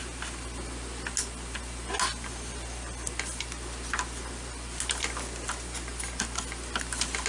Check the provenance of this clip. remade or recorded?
recorded